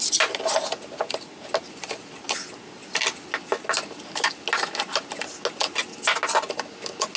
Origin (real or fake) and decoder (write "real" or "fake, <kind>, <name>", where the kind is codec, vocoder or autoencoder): real